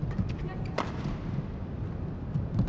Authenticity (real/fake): real